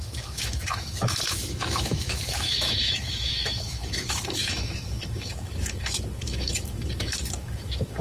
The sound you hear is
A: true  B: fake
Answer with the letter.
B